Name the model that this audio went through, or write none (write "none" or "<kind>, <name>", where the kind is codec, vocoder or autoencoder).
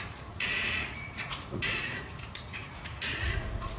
vocoder, Vocos